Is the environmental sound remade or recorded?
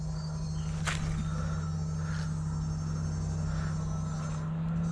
recorded